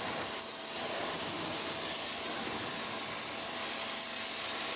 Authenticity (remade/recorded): recorded